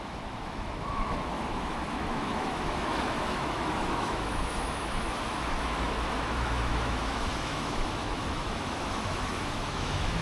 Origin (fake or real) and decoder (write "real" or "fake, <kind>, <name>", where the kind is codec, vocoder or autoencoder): fake, autoencoder, DAC-VAE